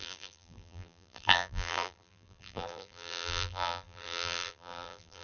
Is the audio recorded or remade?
remade